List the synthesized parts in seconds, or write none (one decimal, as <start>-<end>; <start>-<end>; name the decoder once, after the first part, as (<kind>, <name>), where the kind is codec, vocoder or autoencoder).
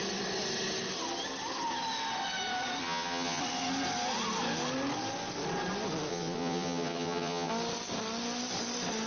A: 2.8-3.4 (vocoder, HiFi-GAN); 6.1-7.5